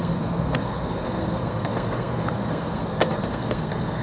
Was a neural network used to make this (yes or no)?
yes